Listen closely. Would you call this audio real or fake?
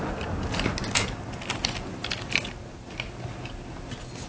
real